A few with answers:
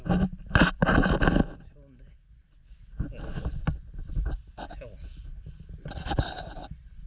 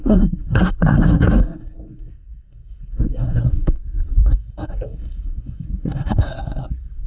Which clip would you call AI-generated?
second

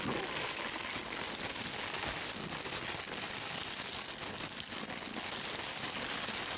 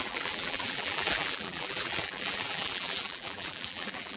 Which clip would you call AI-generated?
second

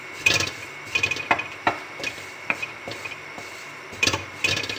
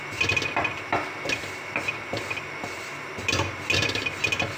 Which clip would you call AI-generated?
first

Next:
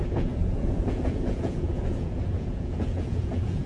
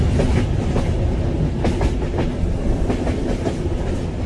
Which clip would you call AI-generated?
first